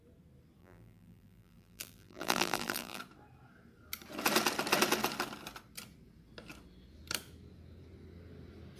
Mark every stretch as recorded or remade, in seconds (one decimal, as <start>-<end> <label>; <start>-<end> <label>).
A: 0.0-0.6 recorded; 0.6-3.0 remade; 3.0-8.8 recorded